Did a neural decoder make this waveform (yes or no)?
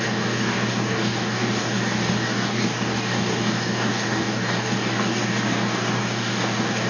yes